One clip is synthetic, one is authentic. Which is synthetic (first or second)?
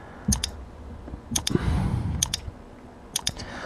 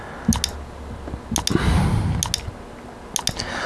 first